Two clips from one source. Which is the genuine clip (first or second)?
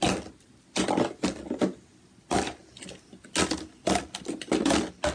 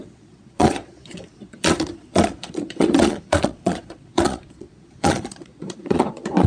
first